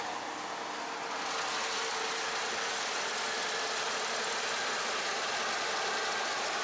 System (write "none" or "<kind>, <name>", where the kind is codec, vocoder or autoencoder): none